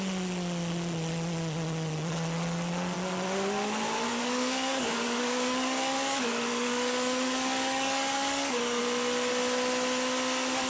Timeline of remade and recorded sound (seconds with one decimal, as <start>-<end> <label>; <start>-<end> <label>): 0.0-4.1 recorded; 4.1-8.8 remade; 8.8-10.7 recorded